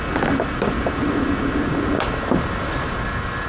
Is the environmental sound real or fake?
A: real